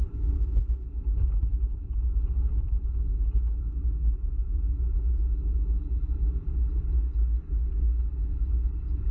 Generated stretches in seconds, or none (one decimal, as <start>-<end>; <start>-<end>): 4.5-5.8

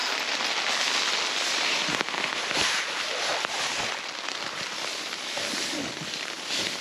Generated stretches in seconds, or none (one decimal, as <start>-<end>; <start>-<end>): 3.3-5.1

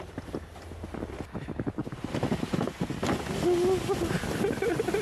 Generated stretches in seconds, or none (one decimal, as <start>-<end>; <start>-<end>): none

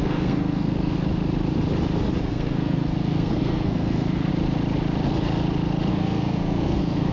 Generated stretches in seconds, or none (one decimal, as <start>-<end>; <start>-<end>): 0.0-1.2; 2.2-4.3; 5.9-7.1

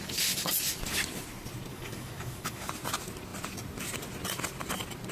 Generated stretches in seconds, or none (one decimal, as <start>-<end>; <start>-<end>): 1.7-2.7

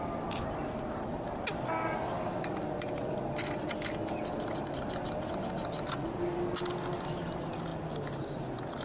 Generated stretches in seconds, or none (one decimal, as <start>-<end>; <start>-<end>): none